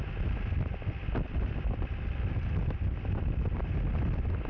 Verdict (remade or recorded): recorded